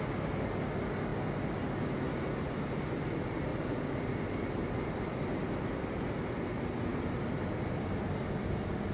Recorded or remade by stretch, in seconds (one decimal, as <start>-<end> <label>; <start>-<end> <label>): 0.0-3.5 recorded; 3.5-5.9 remade; 5.9-6.9 recorded; 6.9-8.1 remade; 8.1-8.9 recorded